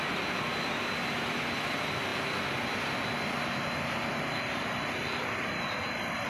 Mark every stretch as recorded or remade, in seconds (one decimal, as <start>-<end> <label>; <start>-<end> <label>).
0.0-6.3 recorded